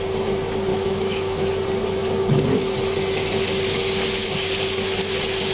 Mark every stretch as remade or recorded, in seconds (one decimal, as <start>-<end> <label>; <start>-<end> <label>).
0.0-0.7 recorded; 0.7-1.5 remade; 1.5-5.5 recorded